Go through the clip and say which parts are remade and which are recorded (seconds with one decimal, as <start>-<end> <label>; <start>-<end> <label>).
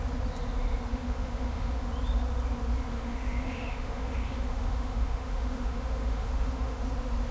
0.0-0.9 recorded; 0.9-1.9 remade; 1.9-2.9 recorded; 2.9-6.8 remade; 6.8-7.3 recorded